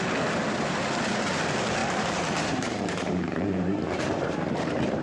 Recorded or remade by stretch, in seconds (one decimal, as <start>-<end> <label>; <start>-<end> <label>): 0.0-1.8 recorded; 1.8-5.0 remade